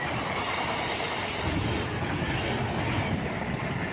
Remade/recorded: recorded